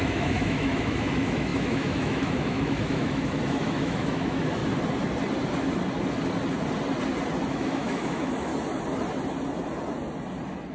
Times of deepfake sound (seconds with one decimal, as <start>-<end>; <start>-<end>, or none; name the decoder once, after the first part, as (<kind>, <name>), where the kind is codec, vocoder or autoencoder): 0.0-4.6 (autoencoder, DAC-VAE); 7.5-8.5